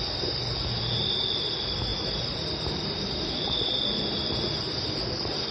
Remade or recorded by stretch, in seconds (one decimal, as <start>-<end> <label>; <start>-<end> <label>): 0.0-5.5 recorded